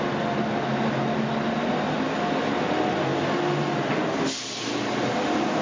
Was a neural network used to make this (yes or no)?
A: no